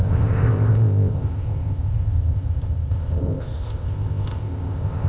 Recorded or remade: remade